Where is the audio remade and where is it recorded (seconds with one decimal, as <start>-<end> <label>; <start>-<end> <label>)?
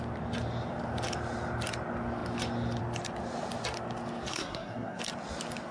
0.0-4.3 recorded; 4.3-5.0 remade; 5.0-5.7 recorded